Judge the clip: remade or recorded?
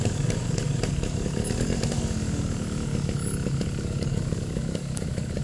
remade